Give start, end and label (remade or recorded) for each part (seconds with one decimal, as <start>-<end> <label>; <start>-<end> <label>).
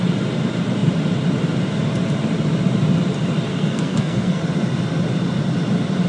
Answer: 0.0-3.5 recorded; 3.5-4.4 remade; 4.4-6.1 recorded